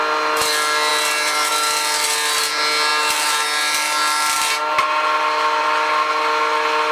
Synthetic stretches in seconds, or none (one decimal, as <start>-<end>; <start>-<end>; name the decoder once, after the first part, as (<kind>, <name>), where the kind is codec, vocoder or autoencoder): none